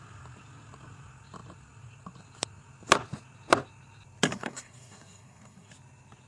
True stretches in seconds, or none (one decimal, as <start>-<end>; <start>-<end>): 0.0-4.3; 5.7-6.3